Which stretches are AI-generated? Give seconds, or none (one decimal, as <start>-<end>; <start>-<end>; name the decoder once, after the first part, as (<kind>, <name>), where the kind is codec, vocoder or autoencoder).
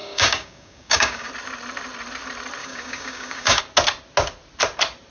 0.0-1.3 (codec, DAC); 2.6-3.6